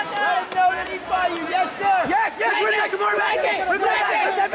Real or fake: real